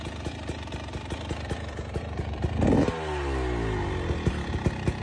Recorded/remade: recorded